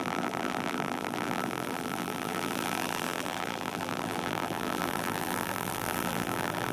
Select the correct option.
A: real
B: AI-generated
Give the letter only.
B